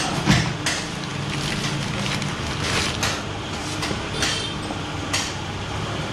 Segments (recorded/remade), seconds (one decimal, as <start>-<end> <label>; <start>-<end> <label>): 0.0-6.1 recorded